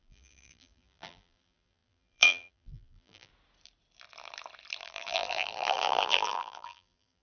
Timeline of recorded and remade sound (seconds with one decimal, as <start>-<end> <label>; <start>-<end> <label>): 0.0-3.3 remade; 3.3-4.8 recorded; 4.8-7.2 remade